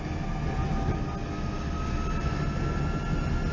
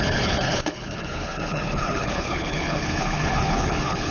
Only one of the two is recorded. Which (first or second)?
first